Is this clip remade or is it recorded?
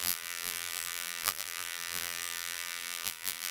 remade